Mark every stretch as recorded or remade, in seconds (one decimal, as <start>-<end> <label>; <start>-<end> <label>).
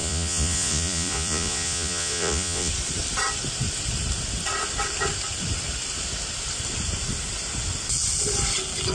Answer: 0.0-2.7 remade; 2.7-8.9 recorded